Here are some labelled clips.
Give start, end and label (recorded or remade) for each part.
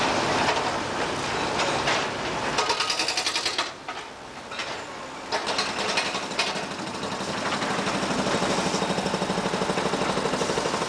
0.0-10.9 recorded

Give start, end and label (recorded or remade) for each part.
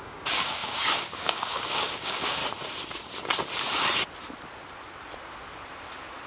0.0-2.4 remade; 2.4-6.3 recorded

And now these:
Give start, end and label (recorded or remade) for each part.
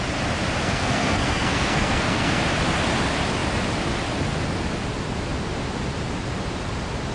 0.0-0.6 recorded; 0.6-2.4 remade; 2.4-7.1 recorded